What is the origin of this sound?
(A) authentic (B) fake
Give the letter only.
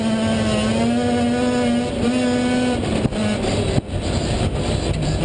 A